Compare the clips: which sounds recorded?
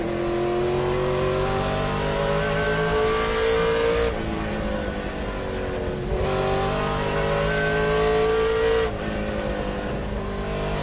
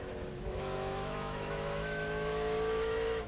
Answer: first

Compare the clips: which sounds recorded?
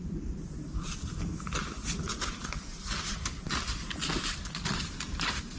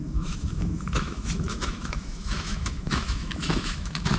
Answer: first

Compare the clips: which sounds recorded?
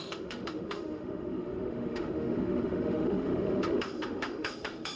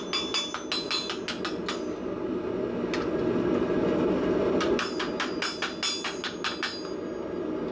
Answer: second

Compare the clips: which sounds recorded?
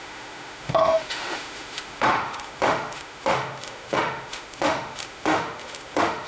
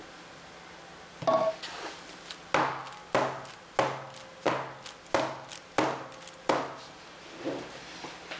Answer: second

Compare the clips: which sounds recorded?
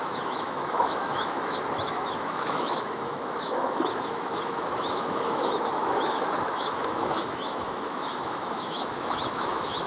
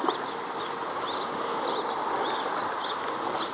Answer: second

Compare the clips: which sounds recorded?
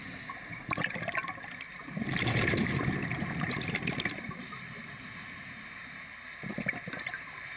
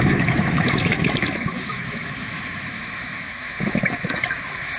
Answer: first